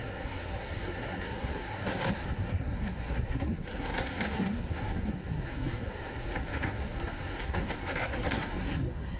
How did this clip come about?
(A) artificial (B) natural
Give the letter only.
A